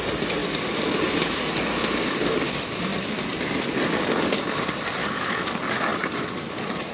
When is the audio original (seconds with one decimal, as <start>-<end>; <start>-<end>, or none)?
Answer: 0.0-5.0; 5.5-6.9